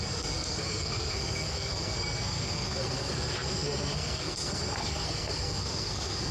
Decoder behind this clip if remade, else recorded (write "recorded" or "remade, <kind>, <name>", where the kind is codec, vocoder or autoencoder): remade, codec, SNAC